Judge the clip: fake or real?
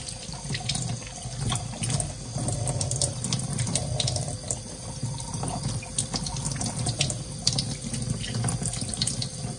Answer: real